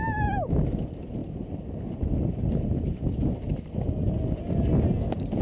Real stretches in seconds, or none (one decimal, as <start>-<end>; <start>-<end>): 0.0-5.4